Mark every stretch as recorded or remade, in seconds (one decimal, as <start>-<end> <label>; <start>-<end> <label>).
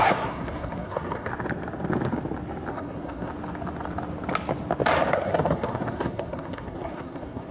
0.0-1.3 remade; 1.3-2.7 recorded; 2.7-3.3 remade; 3.3-5.1 recorded; 5.1-7.5 remade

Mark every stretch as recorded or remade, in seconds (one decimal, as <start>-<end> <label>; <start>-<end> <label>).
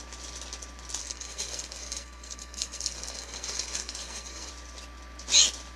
0.0-1.0 recorded; 1.0-4.5 remade; 4.5-5.8 recorded